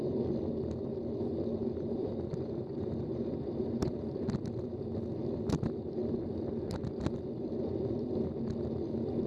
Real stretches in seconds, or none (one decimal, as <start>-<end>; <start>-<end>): 0.0-1.6; 4.0-9.3